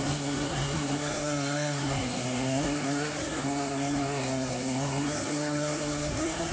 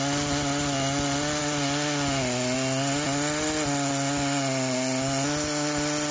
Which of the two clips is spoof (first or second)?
first